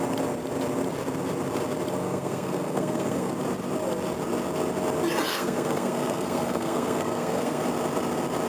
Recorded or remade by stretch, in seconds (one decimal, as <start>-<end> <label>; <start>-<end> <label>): 0.0-2.0 recorded; 2.0-3.3 remade; 3.3-5.3 recorded; 5.3-7.6 remade; 7.6-8.5 recorded